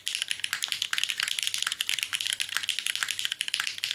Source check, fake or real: real